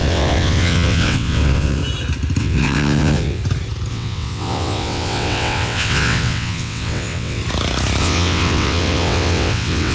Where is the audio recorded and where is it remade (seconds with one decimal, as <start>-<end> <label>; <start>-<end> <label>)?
0.0-1.8 remade; 1.8-2.4 recorded; 2.4-3.4 remade; 3.4-3.9 recorded; 3.9-7.4 remade; 7.4-8.0 recorded; 8.0-9.9 remade